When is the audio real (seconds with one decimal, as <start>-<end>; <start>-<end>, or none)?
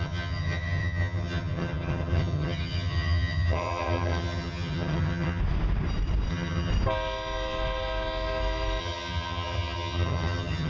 5.4-6.3; 6.7-8.8